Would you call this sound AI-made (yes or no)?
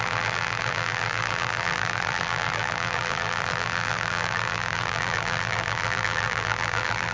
yes